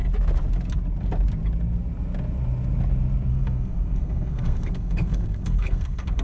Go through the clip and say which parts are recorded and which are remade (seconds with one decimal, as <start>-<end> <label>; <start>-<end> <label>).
0.0-3.3 recorded; 3.3-6.2 remade